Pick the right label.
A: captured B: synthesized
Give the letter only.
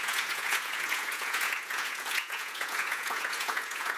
B